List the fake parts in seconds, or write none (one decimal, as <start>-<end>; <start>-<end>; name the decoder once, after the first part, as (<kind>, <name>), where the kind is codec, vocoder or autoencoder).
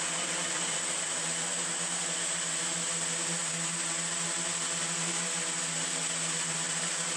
none